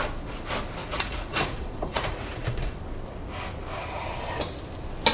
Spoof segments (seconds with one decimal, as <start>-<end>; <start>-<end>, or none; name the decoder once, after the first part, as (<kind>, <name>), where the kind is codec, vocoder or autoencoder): 0.8-2.8 (vocoder, Vocos)